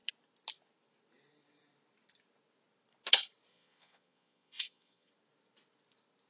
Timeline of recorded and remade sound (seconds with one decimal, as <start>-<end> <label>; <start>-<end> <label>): 0.0-3.5 recorded; 3.5-5.1 remade; 5.1-6.3 recorded